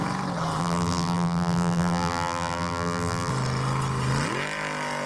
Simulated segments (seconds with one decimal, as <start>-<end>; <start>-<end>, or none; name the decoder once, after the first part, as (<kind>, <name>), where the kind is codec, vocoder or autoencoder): 0.6-3.3 (vocoder, BigVGAN v2)